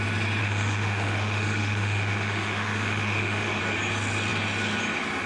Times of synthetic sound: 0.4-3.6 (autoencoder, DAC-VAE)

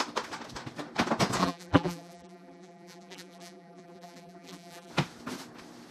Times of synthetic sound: 1.4-4.9 (vocoder, BigVGAN v2)